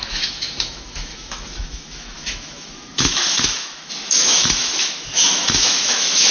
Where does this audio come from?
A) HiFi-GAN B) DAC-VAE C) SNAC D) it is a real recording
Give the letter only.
B